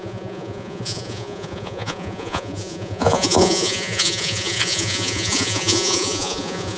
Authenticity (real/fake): fake